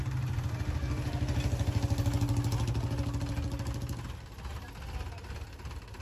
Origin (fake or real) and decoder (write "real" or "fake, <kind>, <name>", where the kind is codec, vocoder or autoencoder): real